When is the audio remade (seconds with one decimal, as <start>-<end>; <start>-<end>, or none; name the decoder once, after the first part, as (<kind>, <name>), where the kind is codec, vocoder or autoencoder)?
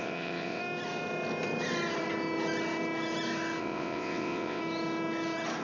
0.0-0.6 (vocoder, WaveNeXt); 3.6-4.6